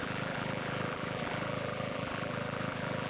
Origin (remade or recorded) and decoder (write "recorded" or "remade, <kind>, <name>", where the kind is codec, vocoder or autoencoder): remade, vocoder, BigVGAN v2